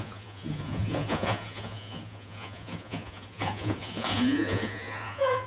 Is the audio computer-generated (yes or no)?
yes